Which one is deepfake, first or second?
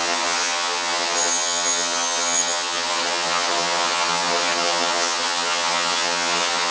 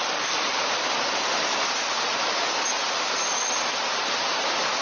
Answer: first